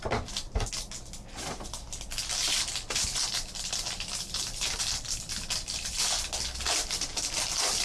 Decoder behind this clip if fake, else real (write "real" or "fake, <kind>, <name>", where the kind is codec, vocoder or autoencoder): real